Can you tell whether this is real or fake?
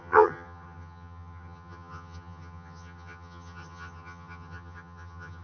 fake